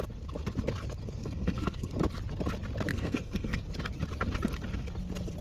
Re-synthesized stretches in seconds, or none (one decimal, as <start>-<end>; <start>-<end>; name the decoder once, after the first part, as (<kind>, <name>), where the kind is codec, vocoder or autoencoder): 1.2-1.9 (codec, SNAC); 2.9-3.6